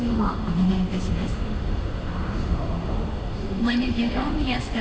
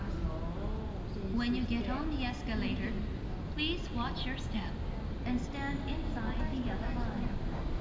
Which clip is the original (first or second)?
second